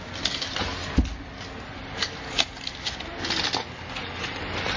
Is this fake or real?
real